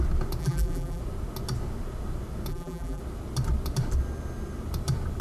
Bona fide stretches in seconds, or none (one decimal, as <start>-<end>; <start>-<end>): 0.0-0.4; 1.0-2.5; 3.0-5.2